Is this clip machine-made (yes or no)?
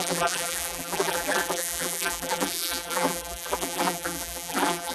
yes